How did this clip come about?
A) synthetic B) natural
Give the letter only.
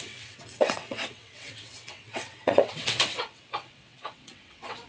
A